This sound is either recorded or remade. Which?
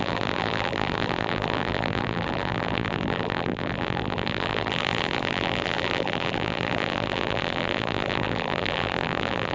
remade